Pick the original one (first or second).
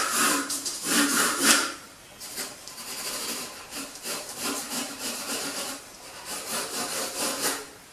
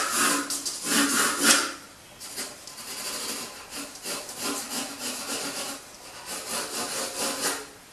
second